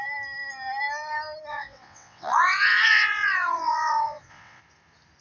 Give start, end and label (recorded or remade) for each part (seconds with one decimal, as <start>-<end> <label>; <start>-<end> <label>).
0.0-1.5 recorded; 1.5-4.6 remade; 4.6-5.2 recorded